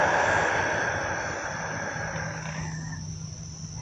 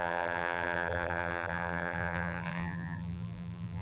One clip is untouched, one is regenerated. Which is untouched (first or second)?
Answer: first